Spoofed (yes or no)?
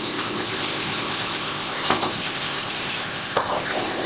yes